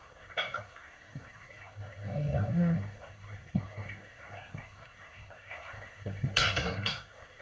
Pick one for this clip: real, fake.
fake